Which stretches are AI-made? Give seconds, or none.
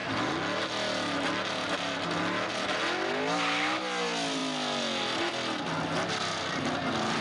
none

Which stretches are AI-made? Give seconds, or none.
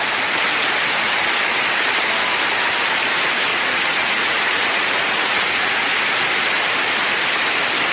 3.5-5.9 (vocoder, Vocos)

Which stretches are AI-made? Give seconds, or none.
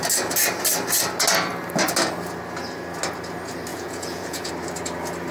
3.7-4.5 (vocoder, Vocos)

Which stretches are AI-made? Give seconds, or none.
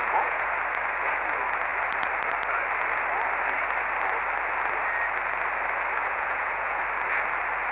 0.0-0.5 (vocoder, Vocos); 6.0-6.8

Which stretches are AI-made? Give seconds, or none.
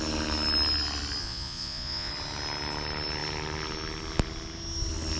1.2-2.1 (vocoder, Vocos)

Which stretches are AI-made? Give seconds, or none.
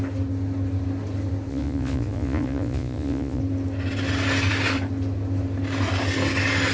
1.5-3.4 (vocoder, Vocos)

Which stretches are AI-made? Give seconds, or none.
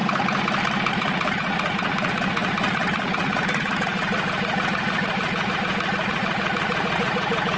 0.9-7.6 (vocoder, Vocos)